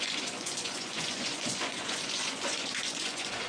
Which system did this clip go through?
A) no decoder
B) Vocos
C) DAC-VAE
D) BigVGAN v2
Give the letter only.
B